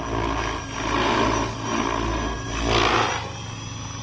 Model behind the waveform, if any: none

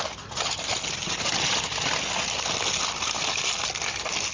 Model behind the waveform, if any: none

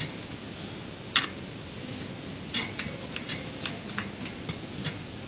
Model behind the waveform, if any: none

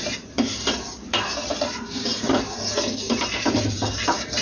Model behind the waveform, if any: vocoder, BigVGAN v2